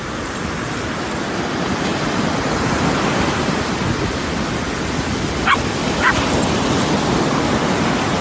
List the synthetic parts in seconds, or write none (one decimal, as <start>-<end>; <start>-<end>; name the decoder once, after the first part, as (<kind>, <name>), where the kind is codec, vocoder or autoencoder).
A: none